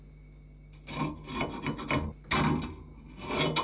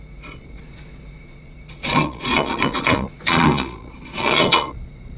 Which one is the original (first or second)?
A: first